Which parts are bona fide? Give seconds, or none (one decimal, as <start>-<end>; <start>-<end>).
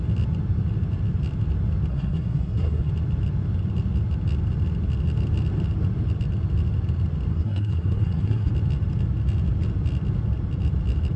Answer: 0.0-1.9; 2.9-7.3; 8.5-11.2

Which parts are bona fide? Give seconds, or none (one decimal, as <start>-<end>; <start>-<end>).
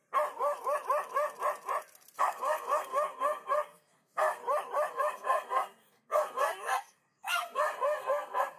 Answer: 0.0-2.2; 4.4-4.9